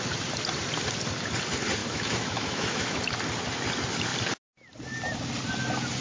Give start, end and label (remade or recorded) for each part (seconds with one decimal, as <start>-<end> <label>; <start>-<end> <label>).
0.0-1.8 recorded; 1.8-3.0 remade; 3.0-6.0 recorded